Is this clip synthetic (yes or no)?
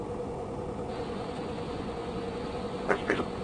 yes